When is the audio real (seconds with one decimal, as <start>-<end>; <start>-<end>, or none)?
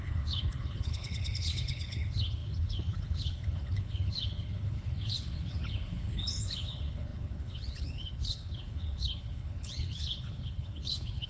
none